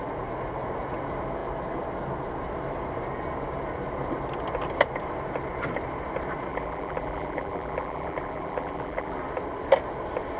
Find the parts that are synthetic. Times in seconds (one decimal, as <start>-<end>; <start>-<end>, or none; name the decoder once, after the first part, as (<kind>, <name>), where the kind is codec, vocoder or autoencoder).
6.5-9.2 (vocoder, BigVGAN v2)